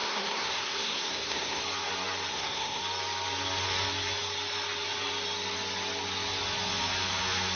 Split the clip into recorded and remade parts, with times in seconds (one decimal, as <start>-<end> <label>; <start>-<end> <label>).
0.0-1.6 remade; 1.6-2.3 recorded; 2.3-2.8 remade; 2.8-7.6 recorded